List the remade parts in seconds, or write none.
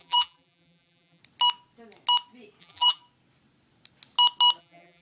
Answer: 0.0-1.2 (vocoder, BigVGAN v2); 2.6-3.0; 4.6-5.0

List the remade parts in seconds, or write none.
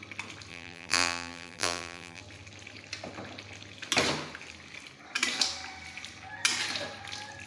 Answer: 0.5-2.2 (vocoder, BigVGAN v2)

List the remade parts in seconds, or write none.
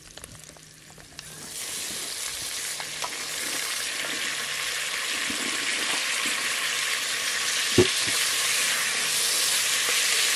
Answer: 5.7-6.5 (vocoder, BigVGAN v2); 7.8-9.2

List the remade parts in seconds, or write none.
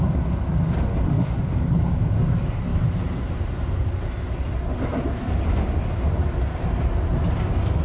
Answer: none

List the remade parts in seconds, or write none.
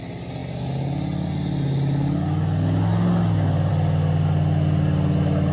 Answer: none